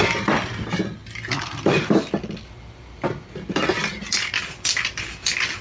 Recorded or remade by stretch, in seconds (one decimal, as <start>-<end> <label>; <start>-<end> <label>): 0.0-5.6 recorded